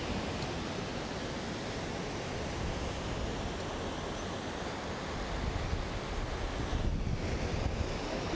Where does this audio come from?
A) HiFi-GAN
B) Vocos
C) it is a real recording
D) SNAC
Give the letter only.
C